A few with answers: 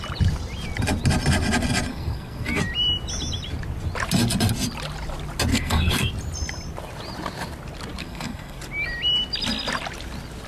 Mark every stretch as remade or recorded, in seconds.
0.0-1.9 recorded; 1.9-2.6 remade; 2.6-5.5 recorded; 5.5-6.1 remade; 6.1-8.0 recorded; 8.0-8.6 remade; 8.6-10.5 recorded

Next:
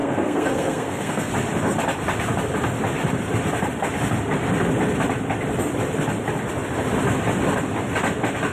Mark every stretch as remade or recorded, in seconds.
0.0-1.3 remade; 1.3-8.5 recorded

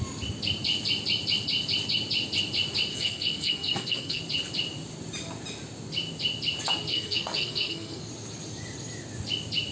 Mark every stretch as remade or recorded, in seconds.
0.0-2.9 recorded; 2.9-4.2 remade; 4.2-6.9 recorded; 6.9-8.1 remade; 8.1-9.7 recorded

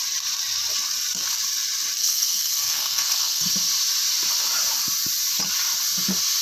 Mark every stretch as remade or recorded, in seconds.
0.0-2.0 recorded; 2.0-3.5 remade; 3.5-6.4 recorded

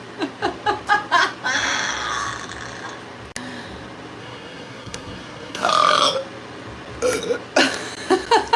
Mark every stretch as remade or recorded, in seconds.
0.0-4.2 recorded; 4.2-5.7 remade; 5.7-8.6 recorded

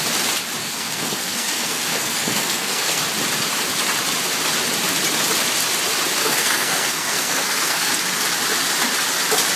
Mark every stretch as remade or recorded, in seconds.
0.0-0.6 recorded; 0.6-3.0 remade; 3.0-6.2 recorded; 6.2-7.9 remade; 7.9-9.6 recorded

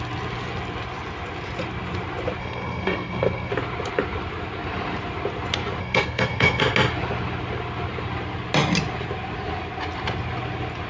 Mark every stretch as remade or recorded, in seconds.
0.0-2.4 recorded; 2.4-3.5 remade; 3.5-5.8 recorded; 5.8-6.6 remade; 6.6-10.9 recorded